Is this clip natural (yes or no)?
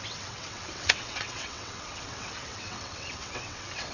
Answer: no